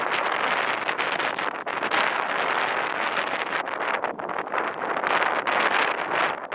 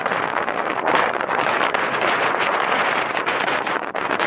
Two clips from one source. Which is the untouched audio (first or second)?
first